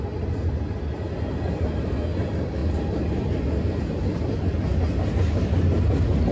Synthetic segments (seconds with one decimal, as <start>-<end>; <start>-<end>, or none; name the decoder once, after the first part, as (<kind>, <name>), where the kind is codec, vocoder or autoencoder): none